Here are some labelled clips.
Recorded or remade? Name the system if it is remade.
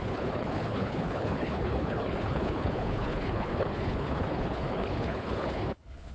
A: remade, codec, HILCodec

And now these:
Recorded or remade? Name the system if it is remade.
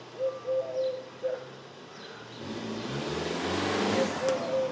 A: recorded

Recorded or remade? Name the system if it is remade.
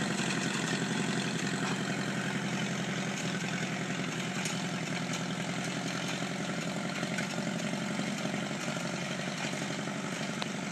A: recorded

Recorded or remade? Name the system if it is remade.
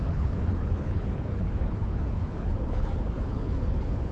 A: remade, codec, HILCodec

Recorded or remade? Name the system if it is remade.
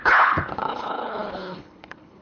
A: remade, codec, HILCodec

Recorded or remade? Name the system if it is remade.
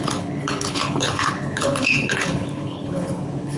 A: remade, codec, HILCodec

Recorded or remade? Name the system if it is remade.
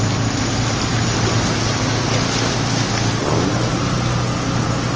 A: recorded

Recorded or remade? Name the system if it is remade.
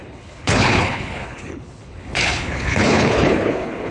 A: remade, codec, HILCodec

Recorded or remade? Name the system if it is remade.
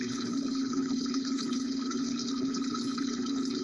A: remade, codec, HILCodec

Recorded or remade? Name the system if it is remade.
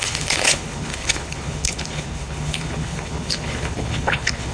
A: remade, codec, HILCodec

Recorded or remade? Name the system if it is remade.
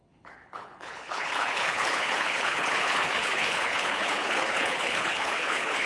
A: remade, codec, HILCodec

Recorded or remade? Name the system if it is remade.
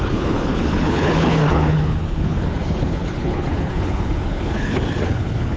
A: remade, codec, HILCodec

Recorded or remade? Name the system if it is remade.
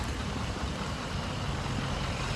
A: recorded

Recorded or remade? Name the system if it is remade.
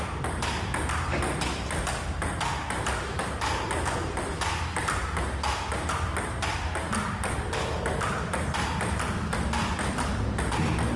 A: recorded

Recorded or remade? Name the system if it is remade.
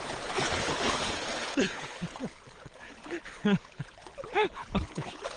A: remade, codec, HILCodec